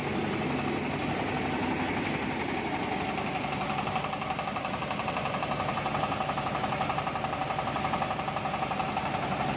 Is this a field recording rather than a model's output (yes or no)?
yes